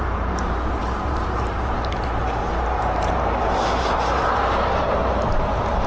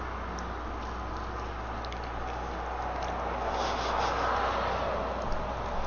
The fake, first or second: first